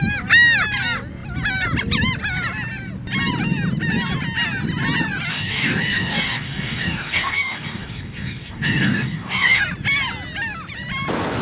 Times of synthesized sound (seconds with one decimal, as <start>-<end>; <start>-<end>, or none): 5.3-9.6